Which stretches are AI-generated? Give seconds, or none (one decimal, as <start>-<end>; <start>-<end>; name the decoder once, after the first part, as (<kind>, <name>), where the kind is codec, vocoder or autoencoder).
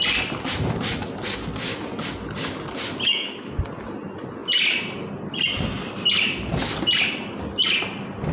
3.1-3.6 (autoencoder, DAC-VAE)